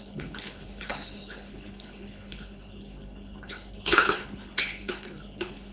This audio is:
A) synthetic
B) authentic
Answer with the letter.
A